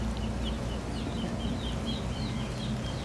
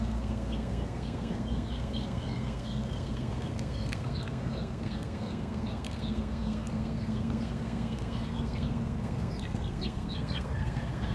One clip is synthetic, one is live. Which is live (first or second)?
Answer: first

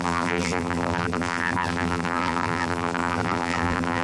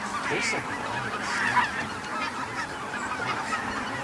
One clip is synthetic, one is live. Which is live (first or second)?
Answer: second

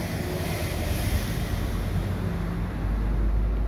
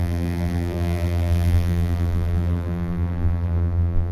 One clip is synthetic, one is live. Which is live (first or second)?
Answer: first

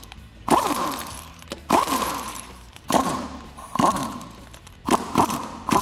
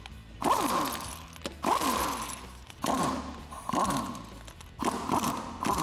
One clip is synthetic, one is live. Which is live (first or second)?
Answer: second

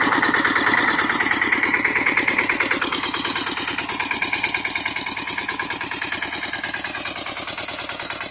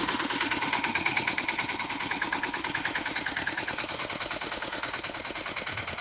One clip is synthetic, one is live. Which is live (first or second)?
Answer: first